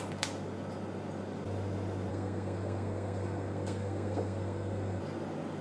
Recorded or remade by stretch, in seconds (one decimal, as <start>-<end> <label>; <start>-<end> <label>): 0.0-2.1 recorded; 2.1-5.0 remade; 5.0-5.6 recorded